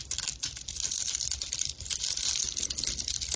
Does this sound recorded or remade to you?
recorded